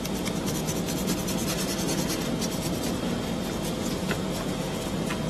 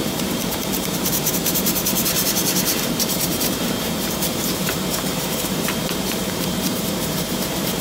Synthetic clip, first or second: second